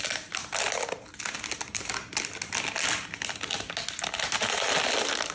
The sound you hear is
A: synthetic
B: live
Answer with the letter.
B